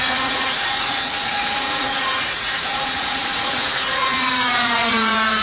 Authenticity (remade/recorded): remade